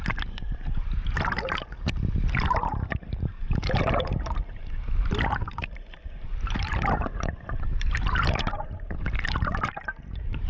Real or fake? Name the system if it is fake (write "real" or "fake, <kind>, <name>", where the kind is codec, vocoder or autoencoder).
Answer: fake, vocoder, BigVGAN v2